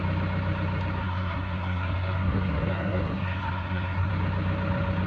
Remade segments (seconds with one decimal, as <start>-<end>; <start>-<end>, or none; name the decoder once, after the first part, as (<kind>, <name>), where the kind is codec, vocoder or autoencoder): 1.0-4.1 (codec, SNAC)